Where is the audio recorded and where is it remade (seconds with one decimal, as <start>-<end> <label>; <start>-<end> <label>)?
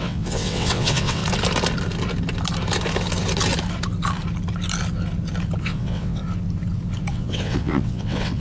0.0-1.2 remade; 1.2-5.6 recorded; 5.6-6.2 remade; 6.2-7.1 recorded; 7.1-8.4 remade